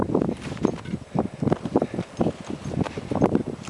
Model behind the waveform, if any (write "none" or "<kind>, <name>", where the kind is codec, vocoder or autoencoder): none